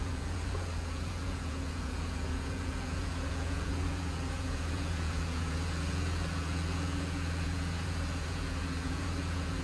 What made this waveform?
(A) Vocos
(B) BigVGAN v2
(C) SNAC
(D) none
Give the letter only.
A